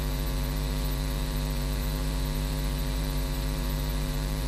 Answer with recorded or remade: remade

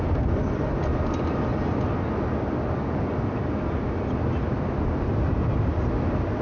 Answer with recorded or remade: recorded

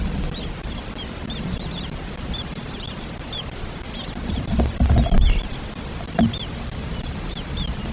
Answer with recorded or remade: recorded